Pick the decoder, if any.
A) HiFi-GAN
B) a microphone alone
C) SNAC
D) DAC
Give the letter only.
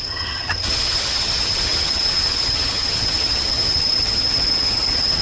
A